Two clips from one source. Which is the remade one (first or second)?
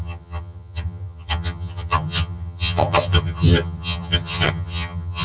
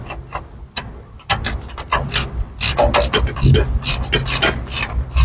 first